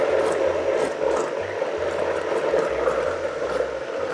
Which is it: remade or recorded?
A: recorded